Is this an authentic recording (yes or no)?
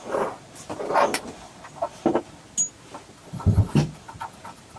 yes